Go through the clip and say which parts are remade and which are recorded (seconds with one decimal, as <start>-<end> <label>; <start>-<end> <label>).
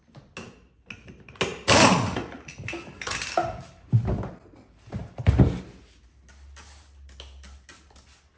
0.0-8.4 recorded